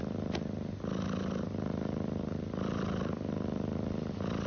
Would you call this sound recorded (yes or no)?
yes